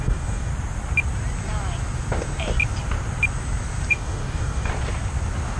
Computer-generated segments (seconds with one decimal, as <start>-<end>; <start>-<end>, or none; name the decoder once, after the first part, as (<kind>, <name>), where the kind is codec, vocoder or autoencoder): 0.0-0.5 (codec, DAC); 3.9-4.7